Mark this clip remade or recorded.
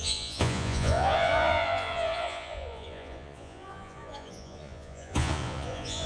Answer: remade